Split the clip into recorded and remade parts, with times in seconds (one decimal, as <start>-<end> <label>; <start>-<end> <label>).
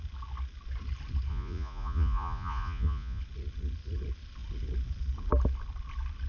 0.0-1.3 recorded; 1.3-3.2 remade; 3.2-6.3 recorded